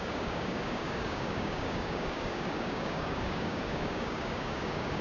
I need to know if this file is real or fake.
fake